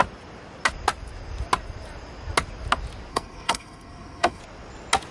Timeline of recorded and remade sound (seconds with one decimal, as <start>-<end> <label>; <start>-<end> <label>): 0.0-3.1 recorded; 3.1-4.4 remade; 4.4-5.1 recorded